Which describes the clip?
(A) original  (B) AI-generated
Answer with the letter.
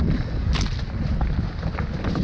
A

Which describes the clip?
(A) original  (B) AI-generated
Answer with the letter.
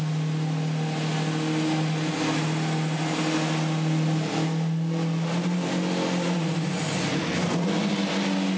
A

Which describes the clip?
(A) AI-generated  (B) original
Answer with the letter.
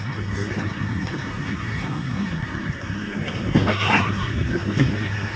A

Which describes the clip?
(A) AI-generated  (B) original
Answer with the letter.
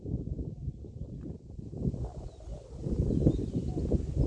B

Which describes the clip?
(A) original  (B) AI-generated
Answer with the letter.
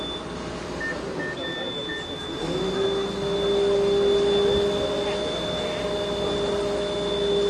A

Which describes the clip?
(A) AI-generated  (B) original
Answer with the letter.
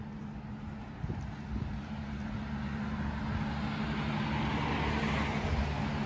B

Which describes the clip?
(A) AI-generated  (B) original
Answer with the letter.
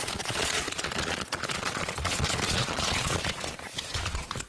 A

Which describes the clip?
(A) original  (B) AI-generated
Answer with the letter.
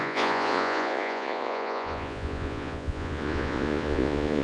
B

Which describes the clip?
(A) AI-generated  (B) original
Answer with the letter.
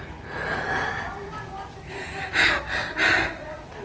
B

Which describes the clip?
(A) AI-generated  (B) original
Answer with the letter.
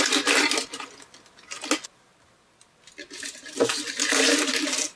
B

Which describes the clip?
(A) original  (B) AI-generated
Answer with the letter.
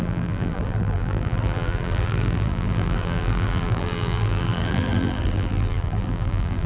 B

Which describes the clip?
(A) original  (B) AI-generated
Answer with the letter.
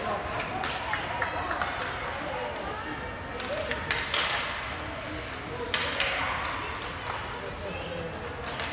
A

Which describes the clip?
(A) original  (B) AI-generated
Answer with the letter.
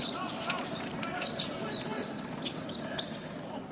A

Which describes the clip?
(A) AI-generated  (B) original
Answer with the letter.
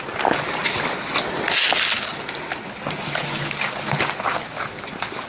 B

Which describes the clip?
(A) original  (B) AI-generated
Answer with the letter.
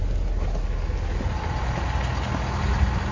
A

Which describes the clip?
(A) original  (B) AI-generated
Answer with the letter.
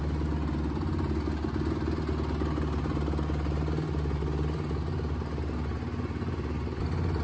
A